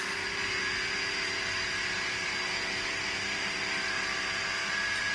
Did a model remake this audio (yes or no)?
no